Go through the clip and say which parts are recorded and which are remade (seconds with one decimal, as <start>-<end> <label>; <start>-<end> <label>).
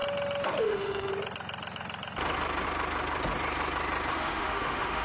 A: 0.0-0.6 recorded; 0.6-1.1 remade; 1.1-4.1 recorded; 4.1-5.0 remade